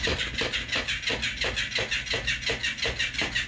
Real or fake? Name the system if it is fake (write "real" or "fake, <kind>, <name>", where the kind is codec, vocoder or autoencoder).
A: real